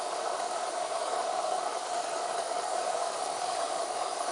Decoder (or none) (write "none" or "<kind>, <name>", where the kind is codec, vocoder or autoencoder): codec, DAC